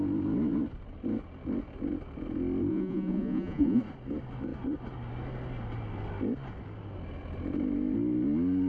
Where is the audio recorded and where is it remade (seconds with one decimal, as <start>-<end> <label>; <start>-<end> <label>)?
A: 0.0-2.7 recorded; 2.7-3.8 remade; 3.8-8.7 recorded